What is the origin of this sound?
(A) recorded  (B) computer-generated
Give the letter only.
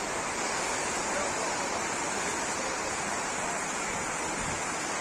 A